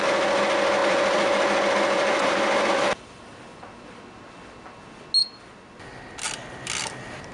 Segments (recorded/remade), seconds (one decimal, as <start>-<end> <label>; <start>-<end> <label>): 0.0-0.8 recorded; 0.8-2.7 remade; 2.7-5.2 recorded; 5.2-6.3 remade; 6.3-7.3 recorded

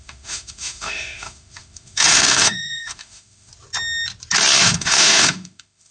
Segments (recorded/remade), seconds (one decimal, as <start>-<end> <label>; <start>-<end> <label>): 0.0-3.5 remade; 3.5-4.6 recorded; 4.6-5.9 remade

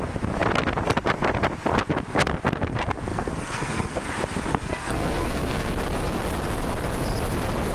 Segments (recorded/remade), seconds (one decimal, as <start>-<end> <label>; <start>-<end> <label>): 0.0-3.1 recorded; 3.1-4.0 remade; 4.0-4.5 recorded; 4.5-5.7 remade; 5.7-7.7 recorded

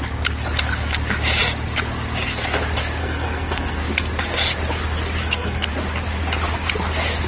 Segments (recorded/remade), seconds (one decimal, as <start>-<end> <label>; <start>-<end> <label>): 0.0-3.0 recorded; 3.0-3.8 remade; 3.8-5.2 recorded; 5.2-5.7 remade; 5.7-7.3 recorded

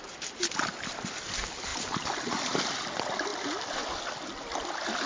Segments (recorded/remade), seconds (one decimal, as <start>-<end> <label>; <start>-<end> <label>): 0.0-5.1 recorded

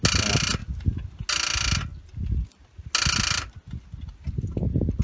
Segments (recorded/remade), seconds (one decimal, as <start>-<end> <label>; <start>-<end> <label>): 0.0-5.0 recorded